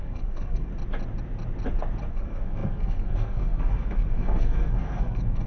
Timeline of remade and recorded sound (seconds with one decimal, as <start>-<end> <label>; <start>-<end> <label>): 0.0-0.7 remade; 0.7-2.1 recorded; 2.1-5.5 remade

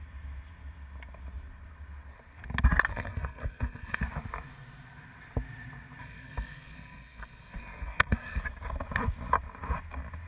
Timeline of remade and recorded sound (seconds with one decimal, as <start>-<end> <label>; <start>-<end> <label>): 0.0-2.9 recorded; 2.9-4.0 remade; 4.0-6.0 recorded; 6.0-8.4 remade; 8.4-10.3 recorded

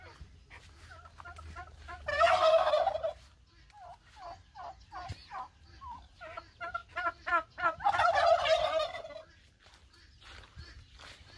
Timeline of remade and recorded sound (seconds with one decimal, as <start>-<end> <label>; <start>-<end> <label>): 0.0-2.1 recorded; 2.1-2.7 remade; 2.7-11.4 recorded